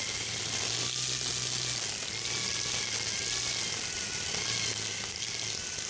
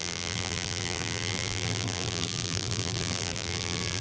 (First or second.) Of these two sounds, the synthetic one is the second